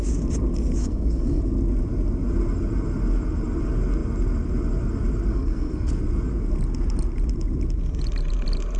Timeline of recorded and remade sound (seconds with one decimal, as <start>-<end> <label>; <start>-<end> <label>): 0.0-0.8 recorded; 0.8-1.4 remade; 1.4-5.3 recorded; 5.3-5.9 remade; 5.9-8.8 recorded